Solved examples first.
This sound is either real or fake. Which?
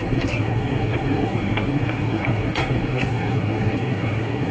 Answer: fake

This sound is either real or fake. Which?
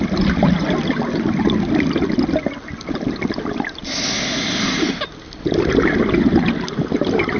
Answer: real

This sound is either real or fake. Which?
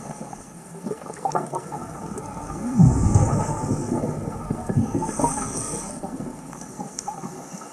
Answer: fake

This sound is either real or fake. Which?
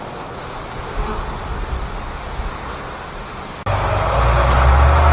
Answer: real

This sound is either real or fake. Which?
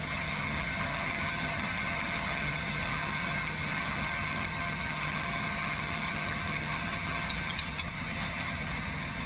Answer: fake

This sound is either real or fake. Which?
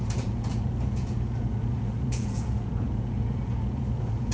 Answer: fake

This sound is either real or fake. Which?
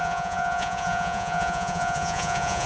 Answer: fake